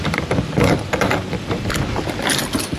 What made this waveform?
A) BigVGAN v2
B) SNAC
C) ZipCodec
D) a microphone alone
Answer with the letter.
A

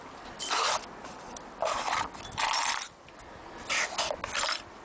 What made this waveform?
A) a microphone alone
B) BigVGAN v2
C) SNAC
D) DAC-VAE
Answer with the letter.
A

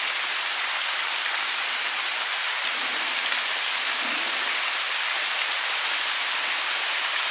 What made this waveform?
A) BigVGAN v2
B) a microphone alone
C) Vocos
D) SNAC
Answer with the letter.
B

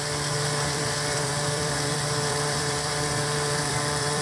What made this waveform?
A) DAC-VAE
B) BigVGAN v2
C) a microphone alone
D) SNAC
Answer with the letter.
B